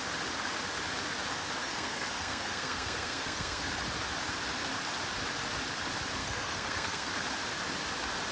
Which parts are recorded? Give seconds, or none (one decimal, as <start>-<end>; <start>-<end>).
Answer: 0.0-1.6; 3.7-6.2; 7.1-8.3